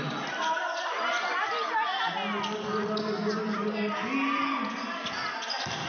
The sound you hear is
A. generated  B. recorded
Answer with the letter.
B